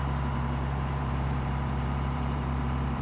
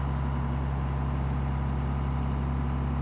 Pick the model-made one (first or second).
first